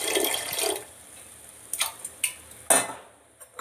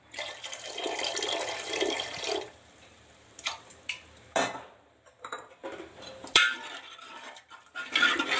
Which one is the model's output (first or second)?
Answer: second